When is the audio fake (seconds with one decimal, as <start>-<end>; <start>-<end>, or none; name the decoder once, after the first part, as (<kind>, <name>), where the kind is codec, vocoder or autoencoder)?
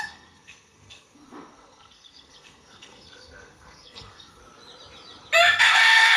0.0-4.4 (codec, SNAC); 5.6-6.2